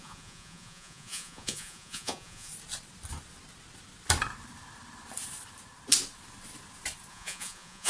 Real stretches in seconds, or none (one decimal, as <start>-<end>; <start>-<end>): 2.5-7.1